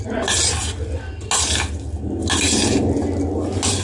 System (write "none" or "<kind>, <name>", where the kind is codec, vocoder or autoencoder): none